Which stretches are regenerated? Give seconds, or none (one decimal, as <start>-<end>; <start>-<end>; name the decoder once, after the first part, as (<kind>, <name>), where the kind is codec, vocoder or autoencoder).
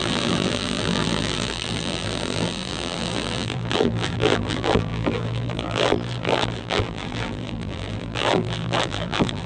0.0-9.5 (vocoder, BigVGAN v2)